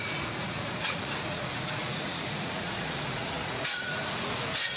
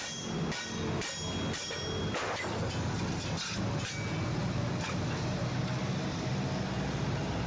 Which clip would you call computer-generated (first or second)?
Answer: first